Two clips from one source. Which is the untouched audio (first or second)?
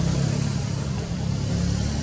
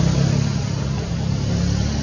second